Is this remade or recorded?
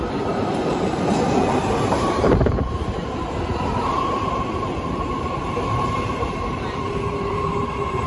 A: remade